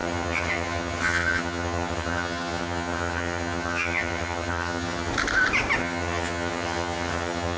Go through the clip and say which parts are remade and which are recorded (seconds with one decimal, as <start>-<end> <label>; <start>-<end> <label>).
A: 0.0-5.1 remade; 5.1-5.8 recorded; 5.8-7.6 remade

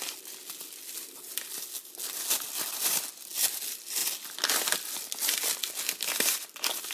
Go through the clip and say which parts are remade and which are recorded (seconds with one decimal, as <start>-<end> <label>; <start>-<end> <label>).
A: 0.0-6.9 recorded

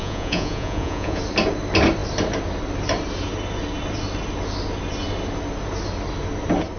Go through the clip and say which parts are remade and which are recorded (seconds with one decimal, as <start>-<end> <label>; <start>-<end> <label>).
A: 0.0-1.2 remade; 1.2-6.8 recorded

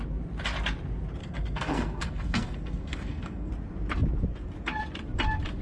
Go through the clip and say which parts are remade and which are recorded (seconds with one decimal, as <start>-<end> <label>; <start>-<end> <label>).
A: 0.0-1.2 recorded; 1.2-3.5 remade; 3.5-5.6 recorded